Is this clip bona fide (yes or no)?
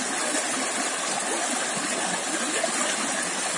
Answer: yes